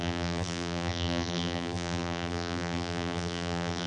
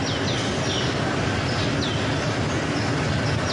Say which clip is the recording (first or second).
second